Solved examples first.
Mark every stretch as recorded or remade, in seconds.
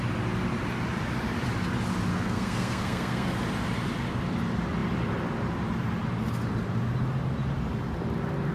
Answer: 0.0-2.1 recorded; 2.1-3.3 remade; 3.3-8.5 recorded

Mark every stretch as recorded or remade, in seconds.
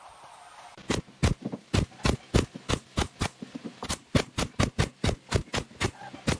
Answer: 0.0-6.4 recorded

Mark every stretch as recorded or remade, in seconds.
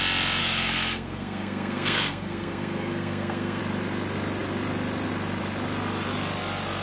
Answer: 0.0-0.4 recorded; 0.4-3.6 remade; 3.6-6.8 recorded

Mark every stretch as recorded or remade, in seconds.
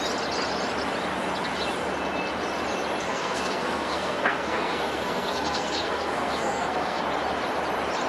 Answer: 0.0-3.0 recorded; 3.0-7.0 remade; 7.0-8.1 recorded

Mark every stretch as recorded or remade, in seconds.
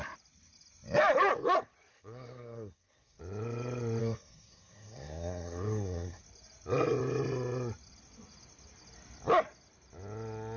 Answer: 0.0-1.9 recorded; 1.9-3.2 remade; 3.2-4.0 recorded; 4.0-6.2 remade; 6.2-10.6 recorded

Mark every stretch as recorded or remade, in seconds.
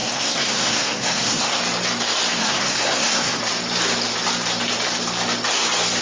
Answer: 0.0-1.6 remade; 1.6-2.4 recorded; 2.4-3.4 remade; 3.4-6.0 recorded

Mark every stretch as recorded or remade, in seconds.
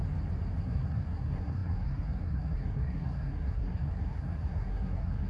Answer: 0.0-0.6 recorded; 0.6-5.3 remade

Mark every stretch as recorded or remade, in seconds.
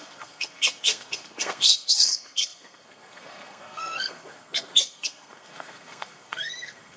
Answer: 0.0-7.0 remade